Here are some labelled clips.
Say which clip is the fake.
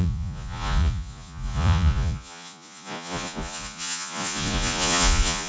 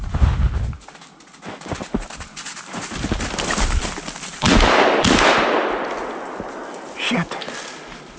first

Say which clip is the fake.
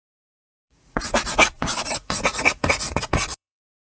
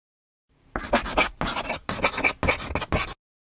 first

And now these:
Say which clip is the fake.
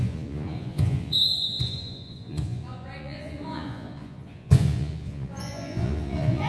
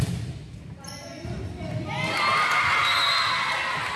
first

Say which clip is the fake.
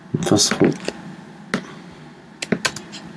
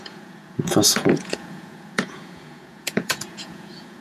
second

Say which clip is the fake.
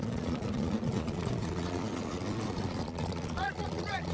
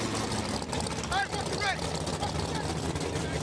first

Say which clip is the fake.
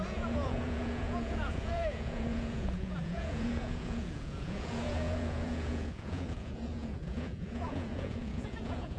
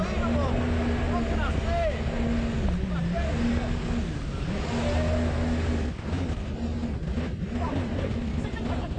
first